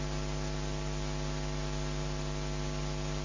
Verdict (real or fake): real